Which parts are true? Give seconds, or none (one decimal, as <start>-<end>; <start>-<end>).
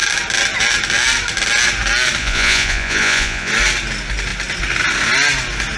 0.0-2.2; 3.5-5.8